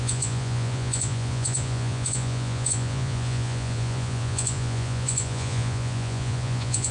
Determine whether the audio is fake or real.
fake